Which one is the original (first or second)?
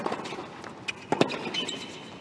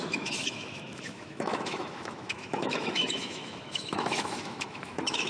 first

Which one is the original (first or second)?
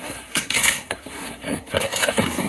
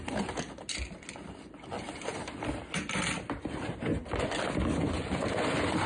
second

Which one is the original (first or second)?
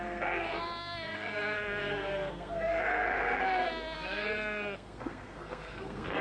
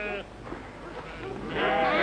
second